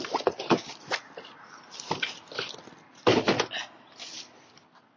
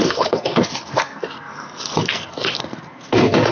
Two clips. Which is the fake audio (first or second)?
second